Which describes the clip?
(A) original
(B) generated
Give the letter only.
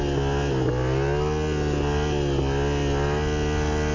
A